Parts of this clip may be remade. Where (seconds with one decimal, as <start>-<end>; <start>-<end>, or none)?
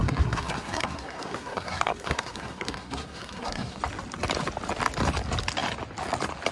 0.0-3.8